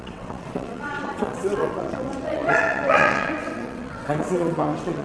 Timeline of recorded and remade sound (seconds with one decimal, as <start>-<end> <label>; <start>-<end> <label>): 0.0-5.0 remade